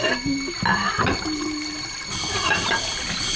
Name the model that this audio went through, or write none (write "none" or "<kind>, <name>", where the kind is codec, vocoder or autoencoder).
none